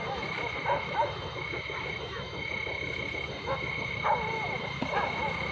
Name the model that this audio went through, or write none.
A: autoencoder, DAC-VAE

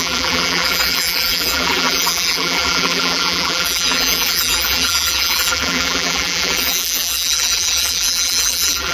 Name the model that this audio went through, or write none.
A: vocoder, BigVGAN v2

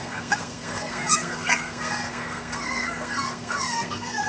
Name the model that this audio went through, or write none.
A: codec, SNAC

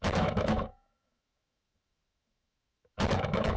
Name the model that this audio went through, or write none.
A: autoencoder, DAC-VAE